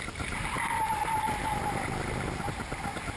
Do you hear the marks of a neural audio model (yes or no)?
no